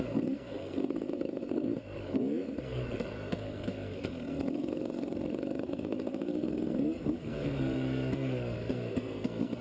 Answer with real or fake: fake